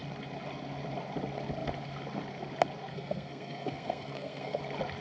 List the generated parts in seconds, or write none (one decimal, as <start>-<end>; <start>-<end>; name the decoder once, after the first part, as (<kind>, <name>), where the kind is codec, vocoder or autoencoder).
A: 2.9-4.6 (codec, SNAC)